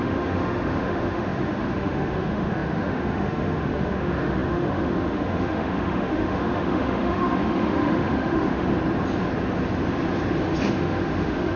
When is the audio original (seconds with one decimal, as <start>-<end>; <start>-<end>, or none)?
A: 8.7-10.7